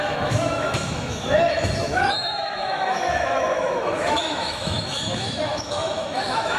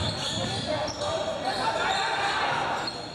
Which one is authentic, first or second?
second